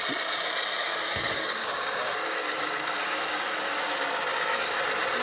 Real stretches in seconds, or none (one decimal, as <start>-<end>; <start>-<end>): 0.0-0.8; 3.9-4.3; 4.8-5.2